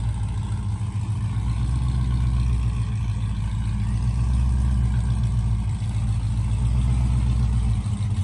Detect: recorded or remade recorded